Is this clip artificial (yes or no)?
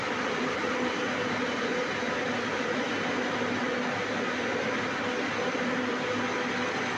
no